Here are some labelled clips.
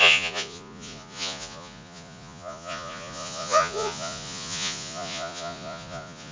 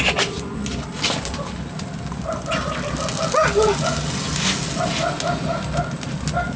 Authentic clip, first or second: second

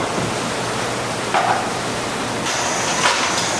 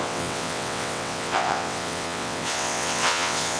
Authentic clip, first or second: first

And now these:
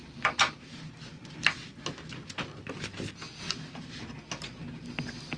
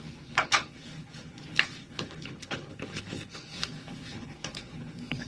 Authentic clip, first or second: first